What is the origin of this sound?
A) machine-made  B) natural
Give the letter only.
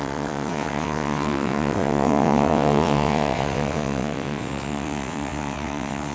A